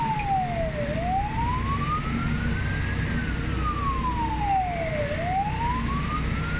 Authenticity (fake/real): real